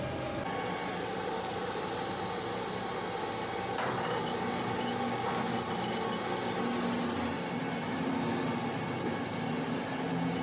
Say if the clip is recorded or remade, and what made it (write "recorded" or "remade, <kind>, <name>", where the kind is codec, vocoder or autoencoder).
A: recorded